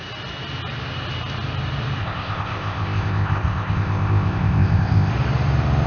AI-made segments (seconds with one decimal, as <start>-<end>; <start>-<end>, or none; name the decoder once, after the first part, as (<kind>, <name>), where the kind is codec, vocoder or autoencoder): 2.0-5.1 (codec, ZipCodec)